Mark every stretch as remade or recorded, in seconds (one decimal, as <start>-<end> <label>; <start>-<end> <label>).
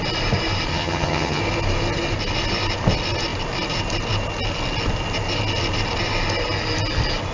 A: 0.0-0.7 recorded; 0.7-1.4 remade; 1.4-7.3 recorded